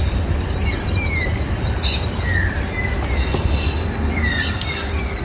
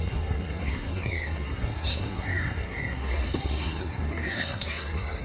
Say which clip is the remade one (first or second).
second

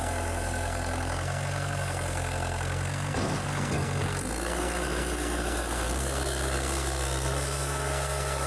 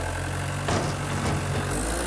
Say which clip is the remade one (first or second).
first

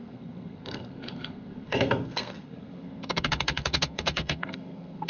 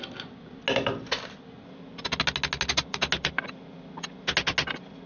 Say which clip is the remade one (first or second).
first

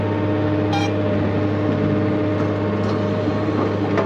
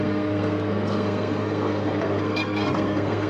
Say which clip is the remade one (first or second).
second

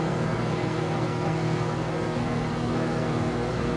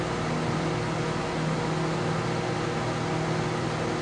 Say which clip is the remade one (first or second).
first